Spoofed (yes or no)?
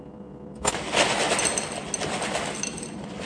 no